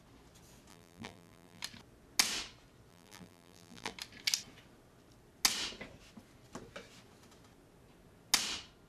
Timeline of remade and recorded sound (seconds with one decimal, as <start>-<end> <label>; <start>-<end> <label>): 0.0-0.7 recorded; 0.7-1.6 remade; 1.6-2.9 recorded; 2.9-3.9 remade; 3.9-8.9 recorded